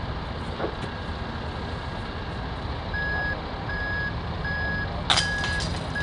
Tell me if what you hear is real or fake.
real